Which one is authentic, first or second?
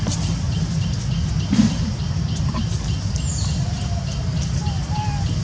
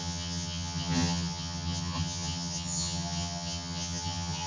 first